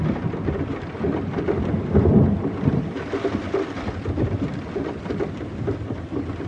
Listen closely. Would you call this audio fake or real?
real